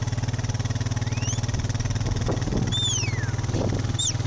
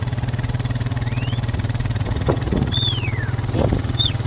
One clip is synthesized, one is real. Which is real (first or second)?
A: first